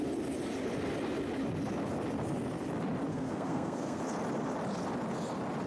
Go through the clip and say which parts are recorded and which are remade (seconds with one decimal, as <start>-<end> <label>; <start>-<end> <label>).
0.0-3.1 recorded; 3.1-4.0 remade; 4.0-5.7 recorded